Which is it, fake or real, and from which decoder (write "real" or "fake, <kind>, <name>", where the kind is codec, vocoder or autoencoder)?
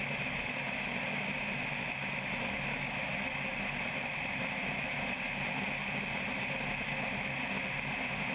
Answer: real